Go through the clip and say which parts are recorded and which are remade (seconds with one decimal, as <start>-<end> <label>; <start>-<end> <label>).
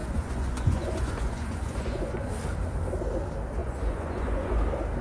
0.0-2.3 remade; 2.3-3.6 recorded; 3.6-4.6 remade; 4.6-5.0 recorded